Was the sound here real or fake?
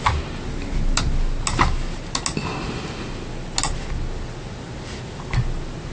real